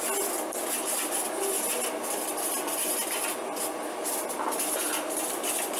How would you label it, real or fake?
real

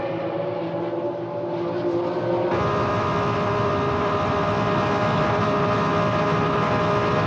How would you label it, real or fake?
real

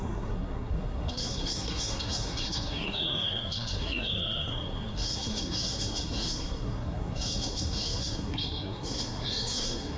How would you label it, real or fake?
fake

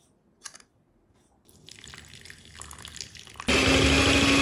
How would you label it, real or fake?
real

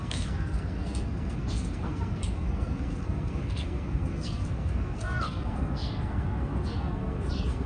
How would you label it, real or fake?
fake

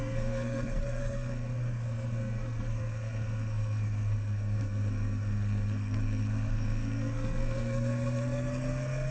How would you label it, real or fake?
fake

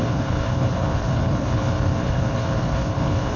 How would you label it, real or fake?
fake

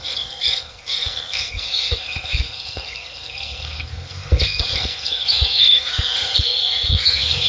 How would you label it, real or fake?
fake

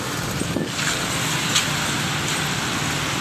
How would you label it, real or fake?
real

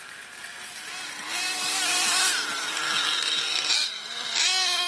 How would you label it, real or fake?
real